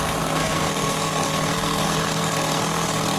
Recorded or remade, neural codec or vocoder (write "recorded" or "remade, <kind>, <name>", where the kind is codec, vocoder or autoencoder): remade, codec, SNAC